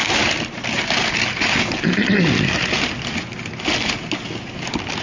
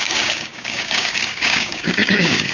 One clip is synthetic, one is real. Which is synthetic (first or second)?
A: second